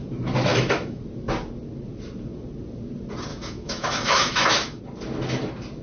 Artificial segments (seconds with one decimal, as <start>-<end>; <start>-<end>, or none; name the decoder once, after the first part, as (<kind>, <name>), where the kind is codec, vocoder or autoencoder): 0.5-1.0 (autoencoder, DAC-VAE); 3.3-4.8